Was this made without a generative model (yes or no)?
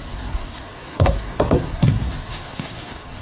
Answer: no